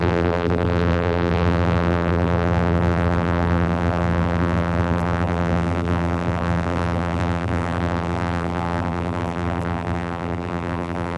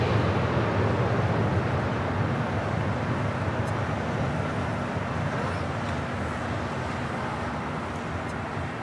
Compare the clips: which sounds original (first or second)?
second